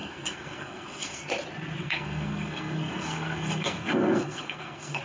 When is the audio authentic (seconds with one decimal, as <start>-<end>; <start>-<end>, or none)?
1.3-1.8